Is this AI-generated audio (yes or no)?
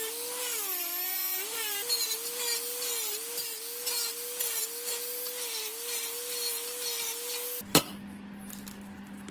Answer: no